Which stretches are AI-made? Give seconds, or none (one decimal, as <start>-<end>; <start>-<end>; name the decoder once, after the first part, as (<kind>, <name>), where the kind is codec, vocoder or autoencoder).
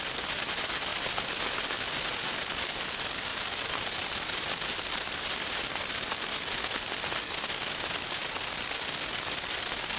3.3-5.8 (vocoder, BigVGAN v2)